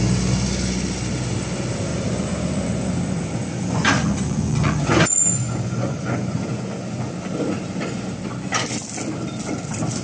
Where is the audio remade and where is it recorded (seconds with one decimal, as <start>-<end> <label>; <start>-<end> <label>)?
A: 0.0-1.9 recorded; 1.9-7.2 remade; 7.2-10.0 recorded